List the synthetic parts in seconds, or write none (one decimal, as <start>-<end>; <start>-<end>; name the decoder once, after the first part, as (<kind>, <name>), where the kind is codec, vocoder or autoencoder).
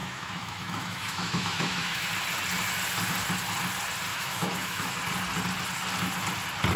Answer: 0.0-2.1 (autoencoder, DAC-VAE); 4.1-5.0